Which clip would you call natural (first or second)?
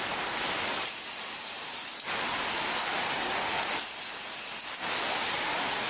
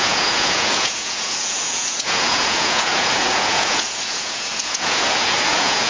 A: first